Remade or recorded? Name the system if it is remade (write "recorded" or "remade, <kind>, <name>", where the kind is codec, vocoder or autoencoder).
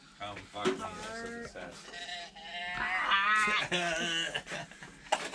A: recorded